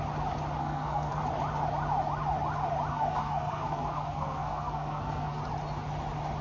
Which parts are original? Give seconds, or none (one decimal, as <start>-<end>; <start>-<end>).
0.0-0.6; 1.2-2.9; 5.4-6.4